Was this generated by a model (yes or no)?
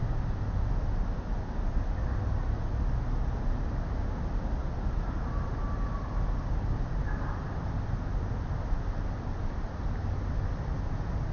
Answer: no